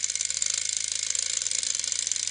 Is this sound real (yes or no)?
yes